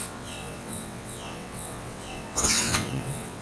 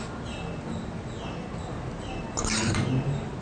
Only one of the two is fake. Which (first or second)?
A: first